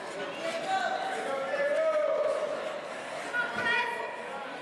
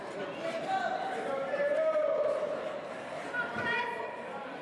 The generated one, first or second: second